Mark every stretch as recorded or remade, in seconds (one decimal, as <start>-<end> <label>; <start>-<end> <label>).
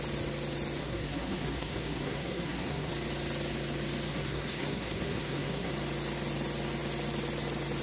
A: 0.0-0.8 recorded; 0.8-2.9 remade; 2.9-4.1 recorded; 4.1-5.7 remade; 5.7-7.8 recorded